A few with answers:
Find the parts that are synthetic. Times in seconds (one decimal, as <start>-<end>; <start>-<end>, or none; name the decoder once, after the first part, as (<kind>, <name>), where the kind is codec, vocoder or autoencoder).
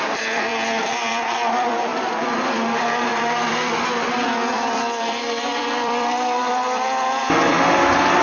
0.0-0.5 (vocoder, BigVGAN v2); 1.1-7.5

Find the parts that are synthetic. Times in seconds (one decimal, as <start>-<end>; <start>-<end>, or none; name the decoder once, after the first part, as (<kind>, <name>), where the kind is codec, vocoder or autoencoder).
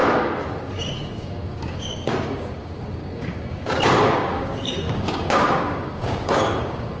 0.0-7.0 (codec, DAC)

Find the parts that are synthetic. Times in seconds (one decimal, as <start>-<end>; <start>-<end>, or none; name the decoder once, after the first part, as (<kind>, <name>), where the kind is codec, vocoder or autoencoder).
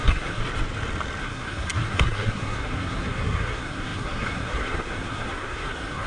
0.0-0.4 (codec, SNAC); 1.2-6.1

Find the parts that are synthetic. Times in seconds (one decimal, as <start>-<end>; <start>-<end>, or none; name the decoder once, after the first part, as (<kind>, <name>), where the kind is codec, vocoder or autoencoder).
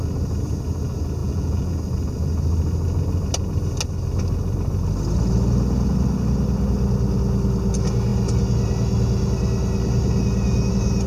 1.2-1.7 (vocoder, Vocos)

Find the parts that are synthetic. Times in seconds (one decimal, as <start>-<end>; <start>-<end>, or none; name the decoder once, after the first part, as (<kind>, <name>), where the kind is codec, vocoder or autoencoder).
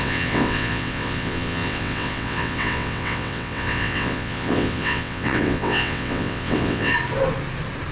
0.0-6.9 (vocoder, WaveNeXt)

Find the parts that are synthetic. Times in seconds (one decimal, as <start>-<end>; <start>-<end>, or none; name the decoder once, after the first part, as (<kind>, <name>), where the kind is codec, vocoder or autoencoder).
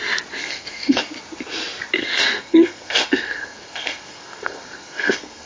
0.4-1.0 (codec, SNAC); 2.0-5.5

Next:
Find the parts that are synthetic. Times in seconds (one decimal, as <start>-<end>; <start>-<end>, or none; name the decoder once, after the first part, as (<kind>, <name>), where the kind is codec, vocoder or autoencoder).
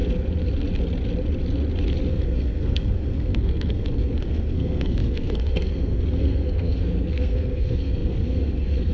2.1-8.9 (codec, SNAC)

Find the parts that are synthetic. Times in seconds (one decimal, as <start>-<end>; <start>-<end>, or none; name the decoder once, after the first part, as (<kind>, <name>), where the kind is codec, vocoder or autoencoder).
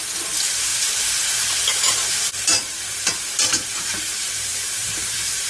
0.0-5.5 (vocoder, BigVGAN v2)